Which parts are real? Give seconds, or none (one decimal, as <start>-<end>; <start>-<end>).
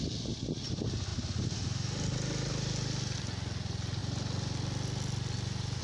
0.0-5.8